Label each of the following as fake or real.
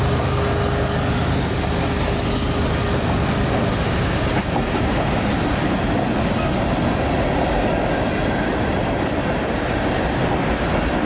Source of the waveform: real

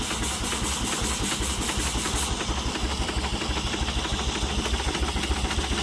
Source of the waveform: real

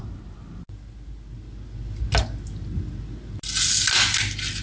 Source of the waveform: real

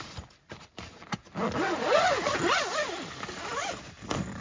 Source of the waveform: real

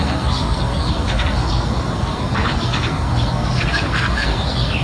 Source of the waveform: fake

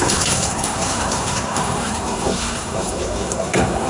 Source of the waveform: fake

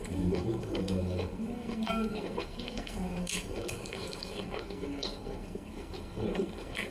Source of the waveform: fake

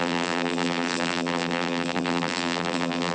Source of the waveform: fake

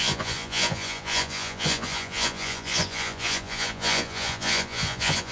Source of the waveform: fake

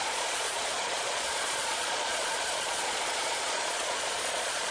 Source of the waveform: fake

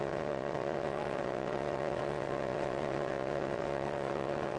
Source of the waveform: fake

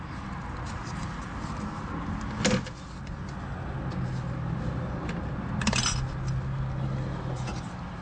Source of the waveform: real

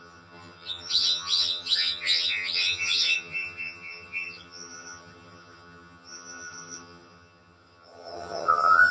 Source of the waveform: fake